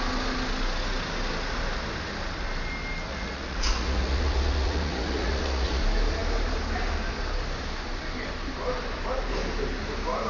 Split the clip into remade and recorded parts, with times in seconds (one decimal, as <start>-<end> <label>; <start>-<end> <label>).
0.0-3.1 recorded; 3.1-5.8 remade; 5.8-10.3 recorded